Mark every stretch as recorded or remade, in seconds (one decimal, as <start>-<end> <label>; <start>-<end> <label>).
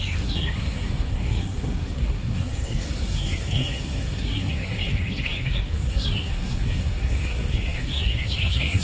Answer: 0.0-8.8 remade